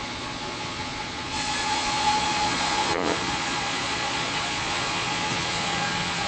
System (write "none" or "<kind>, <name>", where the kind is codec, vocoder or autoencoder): vocoder, Vocos